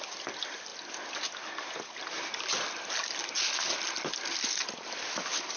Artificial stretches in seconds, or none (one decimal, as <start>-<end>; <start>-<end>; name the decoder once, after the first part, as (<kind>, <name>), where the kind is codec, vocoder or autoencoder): 0.0-0.7 (vocoder, BigVGAN v2); 4.1-5.6